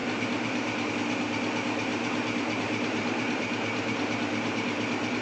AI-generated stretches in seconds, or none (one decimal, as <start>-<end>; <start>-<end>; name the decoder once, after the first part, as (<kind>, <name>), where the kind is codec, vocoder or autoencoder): 0.0-0.9 (vocoder, BigVGAN v2); 1.9-5.2